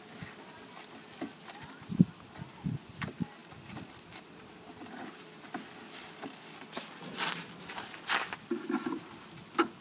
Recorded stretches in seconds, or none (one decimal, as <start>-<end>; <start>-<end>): 0.0-9.8